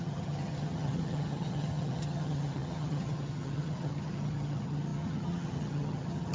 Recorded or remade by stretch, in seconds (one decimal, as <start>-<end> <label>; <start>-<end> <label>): 0.0-6.3 remade